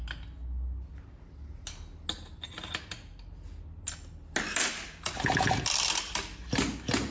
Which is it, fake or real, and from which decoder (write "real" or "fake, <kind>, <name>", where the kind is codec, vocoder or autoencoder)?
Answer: real